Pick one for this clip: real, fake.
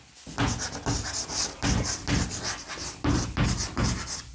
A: real